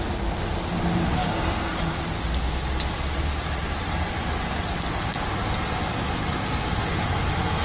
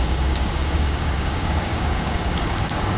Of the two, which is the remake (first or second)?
second